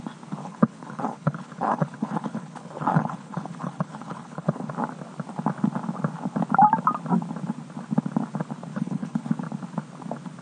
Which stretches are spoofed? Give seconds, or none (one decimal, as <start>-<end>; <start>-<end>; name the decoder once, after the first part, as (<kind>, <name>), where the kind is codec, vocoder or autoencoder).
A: 0.4-4.7 (codec, HILCodec); 8.7-9.3